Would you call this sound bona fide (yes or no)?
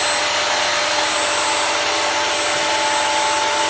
yes